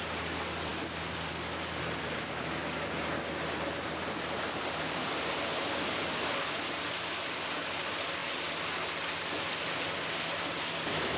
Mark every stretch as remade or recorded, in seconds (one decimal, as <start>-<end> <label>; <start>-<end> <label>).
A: 0.0-11.2 recorded